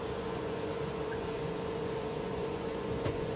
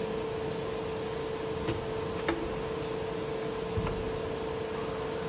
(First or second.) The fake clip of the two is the first